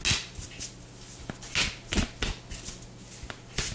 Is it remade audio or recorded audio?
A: recorded